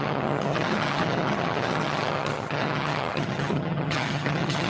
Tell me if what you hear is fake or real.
fake